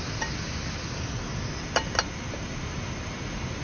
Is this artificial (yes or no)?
no